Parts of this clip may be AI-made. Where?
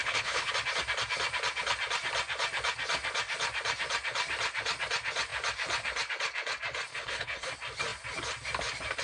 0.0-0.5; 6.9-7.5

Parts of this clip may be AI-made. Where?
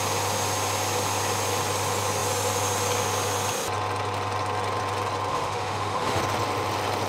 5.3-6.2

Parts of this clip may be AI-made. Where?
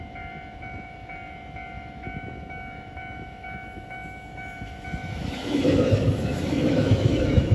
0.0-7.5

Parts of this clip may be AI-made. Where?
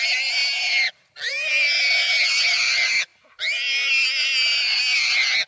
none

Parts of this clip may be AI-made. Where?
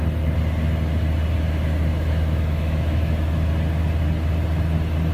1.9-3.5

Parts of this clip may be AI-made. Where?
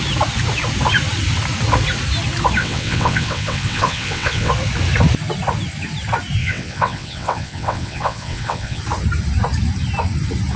2.6-4.5; 6.4-8.8